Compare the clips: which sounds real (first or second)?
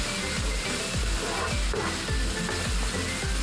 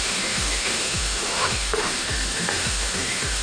first